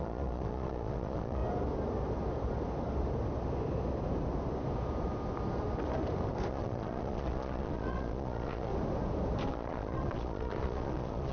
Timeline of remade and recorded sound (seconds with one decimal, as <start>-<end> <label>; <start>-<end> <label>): 0.0-1.4 remade; 1.4-6.5 recorded; 6.5-8.7 remade; 8.7-9.5 recorded; 9.5-11.3 remade